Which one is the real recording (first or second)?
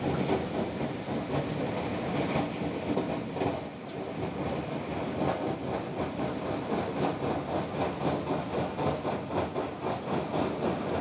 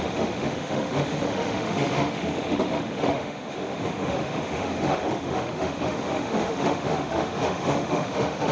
first